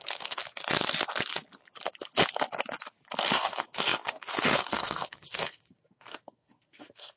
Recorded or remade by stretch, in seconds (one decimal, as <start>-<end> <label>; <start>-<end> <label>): 0.0-0.4 remade; 0.4-3.2 recorded; 3.2-7.2 remade